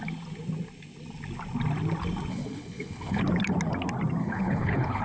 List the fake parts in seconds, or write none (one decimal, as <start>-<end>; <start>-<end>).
2.3-3.2; 4.2-5.0